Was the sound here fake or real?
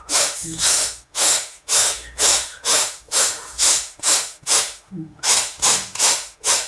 fake